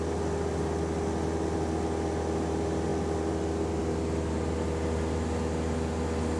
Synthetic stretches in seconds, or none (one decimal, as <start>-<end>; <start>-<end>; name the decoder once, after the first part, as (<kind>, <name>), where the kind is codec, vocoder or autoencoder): none